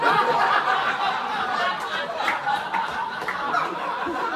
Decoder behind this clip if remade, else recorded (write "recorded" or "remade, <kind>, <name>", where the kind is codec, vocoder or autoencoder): recorded